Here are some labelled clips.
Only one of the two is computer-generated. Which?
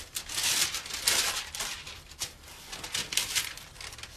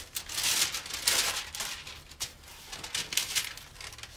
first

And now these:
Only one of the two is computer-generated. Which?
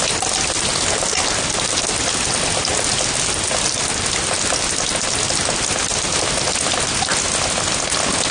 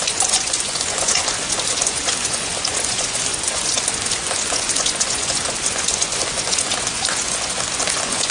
second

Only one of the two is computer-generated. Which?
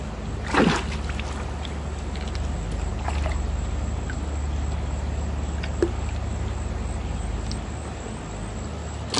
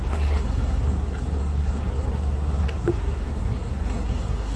second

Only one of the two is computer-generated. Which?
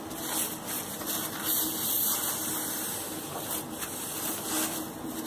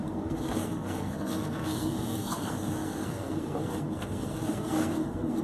second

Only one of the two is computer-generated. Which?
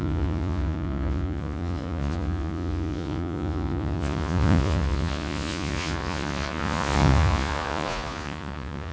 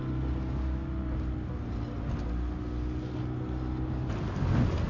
first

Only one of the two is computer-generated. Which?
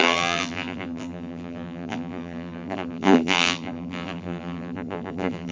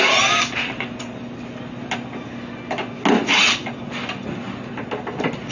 first